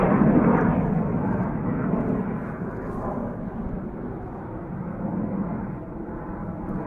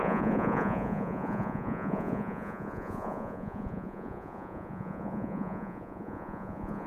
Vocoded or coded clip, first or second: second